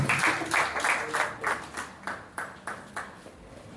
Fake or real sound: real